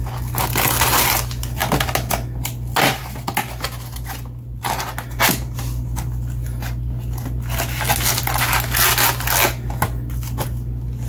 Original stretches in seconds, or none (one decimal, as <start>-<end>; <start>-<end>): 0.0-11.1